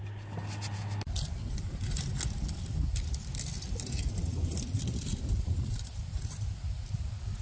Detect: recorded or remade recorded